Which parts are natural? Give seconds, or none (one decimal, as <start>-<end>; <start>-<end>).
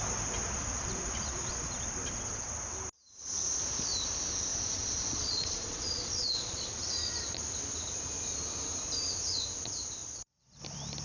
0.0-0.4; 2.5-4.5; 6.7-10.0; 10.6-11.0